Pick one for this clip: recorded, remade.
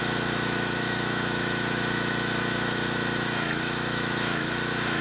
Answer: remade